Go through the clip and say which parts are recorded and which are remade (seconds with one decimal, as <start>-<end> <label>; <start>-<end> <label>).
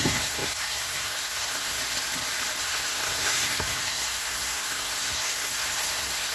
0.0-1.8 remade; 1.8-2.6 recorded; 2.6-6.3 remade